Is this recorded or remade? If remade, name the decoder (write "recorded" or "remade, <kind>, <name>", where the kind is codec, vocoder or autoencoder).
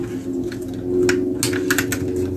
recorded